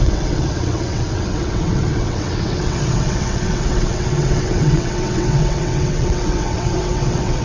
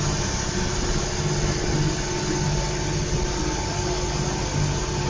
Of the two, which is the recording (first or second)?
second